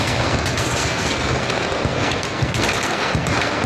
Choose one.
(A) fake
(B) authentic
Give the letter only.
A